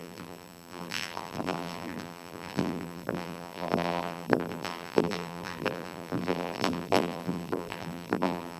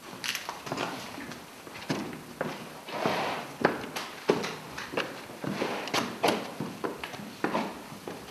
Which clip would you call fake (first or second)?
first